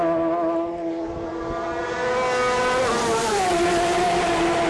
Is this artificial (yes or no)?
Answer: no